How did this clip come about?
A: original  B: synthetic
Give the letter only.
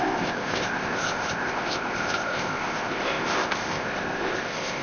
B